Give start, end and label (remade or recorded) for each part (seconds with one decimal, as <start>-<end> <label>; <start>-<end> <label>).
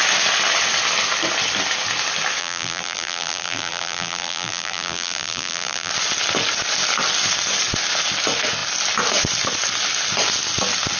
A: 0.0-2.4 recorded; 2.4-5.9 remade; 5.9-11.0 recorded